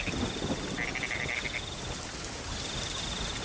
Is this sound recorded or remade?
recorded